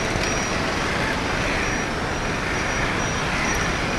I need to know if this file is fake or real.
real